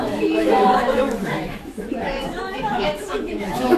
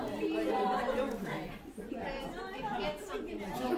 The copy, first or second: first